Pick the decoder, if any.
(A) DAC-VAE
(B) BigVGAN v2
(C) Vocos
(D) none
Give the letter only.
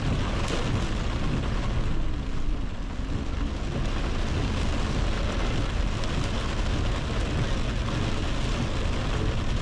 D